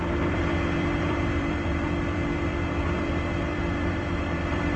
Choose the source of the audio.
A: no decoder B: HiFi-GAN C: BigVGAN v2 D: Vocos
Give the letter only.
C